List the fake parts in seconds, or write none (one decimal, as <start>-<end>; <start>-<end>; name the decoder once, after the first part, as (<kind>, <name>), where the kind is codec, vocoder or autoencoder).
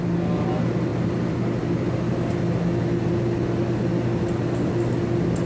none